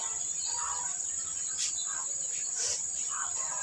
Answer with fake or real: fake